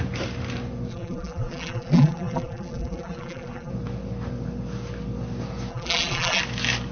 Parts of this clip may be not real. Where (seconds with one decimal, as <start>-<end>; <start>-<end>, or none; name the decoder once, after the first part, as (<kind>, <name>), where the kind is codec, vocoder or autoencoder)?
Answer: 0.9-3.7 (vocoder, BigVGAN v2); 5.7-6.4